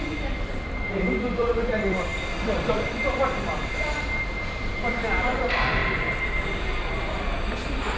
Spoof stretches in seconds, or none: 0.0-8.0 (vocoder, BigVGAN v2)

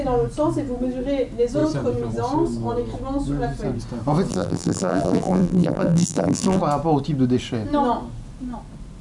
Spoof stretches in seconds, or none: 4.3-6.6 (vocoder, BigVGAN v2)

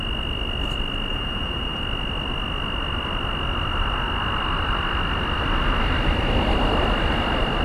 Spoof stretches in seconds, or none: 1.1-1.8 (vocoder, BigVGAN v2)

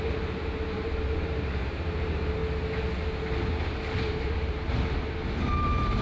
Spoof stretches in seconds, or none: 0.0-2.4 (vocoder, BigVGAN v2); 3.5-6.0

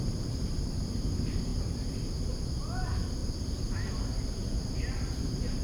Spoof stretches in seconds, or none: 0.0-1.5 (vocoder, BigVGAN v2); 2.6-5.6

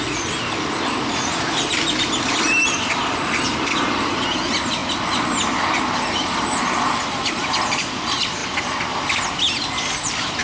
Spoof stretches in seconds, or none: 0.0-4.8 (vocoder, BigVGAN v2); 6.0-8.4; 9.4-10.4

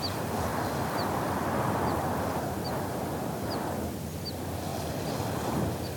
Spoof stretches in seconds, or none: none

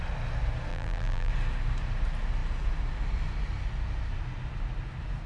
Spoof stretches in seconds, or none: 0.7-1.3 (vocoder, BigVGAN v2)